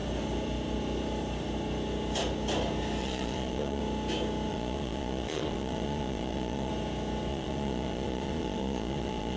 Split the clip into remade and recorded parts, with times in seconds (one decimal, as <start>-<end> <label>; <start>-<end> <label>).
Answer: 0.0-3.0 recorded; 3.0-3.8 remade; 3.8-4.5 recorded; 4.5-6.7 remade; 6.7-7.3 recorded; 7.3-9.4 remade